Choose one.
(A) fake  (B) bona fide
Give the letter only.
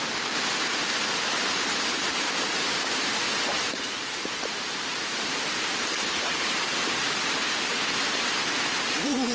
A